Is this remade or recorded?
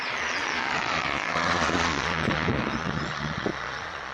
remade